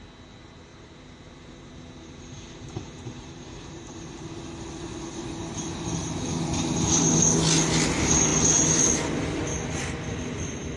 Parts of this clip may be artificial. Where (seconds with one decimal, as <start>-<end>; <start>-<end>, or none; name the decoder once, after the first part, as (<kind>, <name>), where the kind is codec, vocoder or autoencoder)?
0.7-4.3 (vocoder, BigVGAN v2)